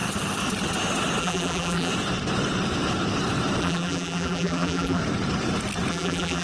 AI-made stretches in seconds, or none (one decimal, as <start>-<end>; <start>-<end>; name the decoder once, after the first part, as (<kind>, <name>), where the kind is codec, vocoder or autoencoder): 1.2-1.9 (vocoder, BigVGAN v2); 3.6-5.0; 5.9-6.4